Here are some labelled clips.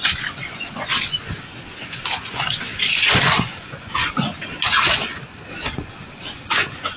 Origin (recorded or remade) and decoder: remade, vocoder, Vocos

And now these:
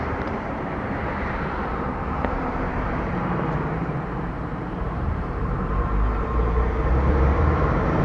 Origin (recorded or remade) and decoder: remade, vocoder, BigVGAN v2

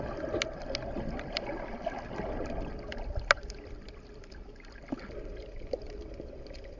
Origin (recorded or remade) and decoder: recorded